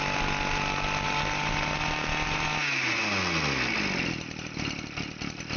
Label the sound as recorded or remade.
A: recorded